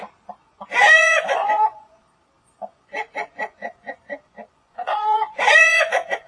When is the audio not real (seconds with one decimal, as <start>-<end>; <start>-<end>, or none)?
0.4-2.0; 2.7-6.3